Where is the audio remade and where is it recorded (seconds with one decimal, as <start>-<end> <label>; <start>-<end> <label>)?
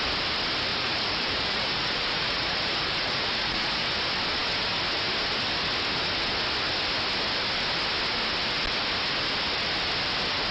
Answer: 0.0-0.7 recorded; 0.7-3.9 remade; 3.9-10.5 recorded